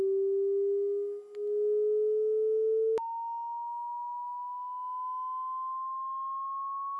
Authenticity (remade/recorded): recorded